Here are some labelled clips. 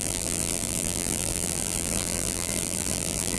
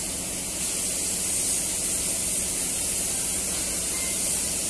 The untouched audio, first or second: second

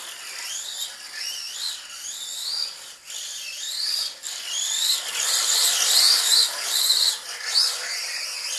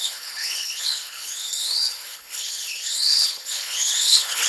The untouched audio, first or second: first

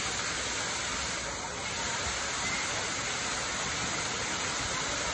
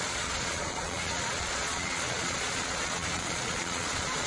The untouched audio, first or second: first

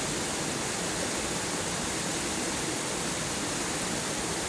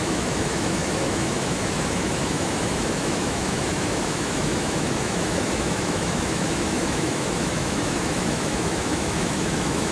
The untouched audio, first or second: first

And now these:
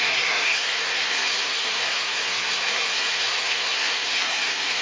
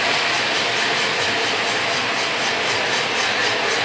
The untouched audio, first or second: second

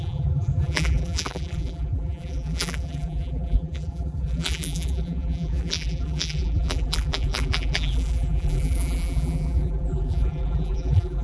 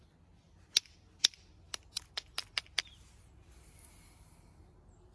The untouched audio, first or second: second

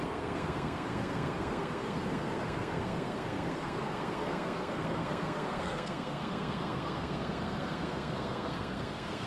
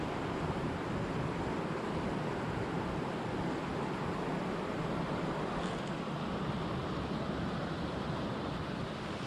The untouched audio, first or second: second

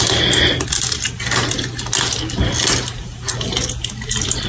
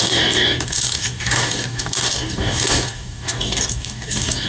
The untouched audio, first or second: first